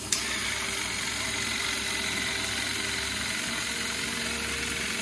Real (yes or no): yes